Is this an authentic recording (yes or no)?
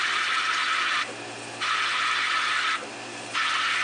yes